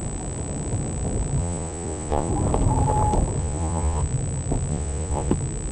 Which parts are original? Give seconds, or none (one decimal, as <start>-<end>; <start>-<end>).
0.0-1.4; 2.3-3.4; 4.0-4.7; 5.3-5.7